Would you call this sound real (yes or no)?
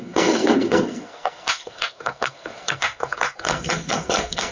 no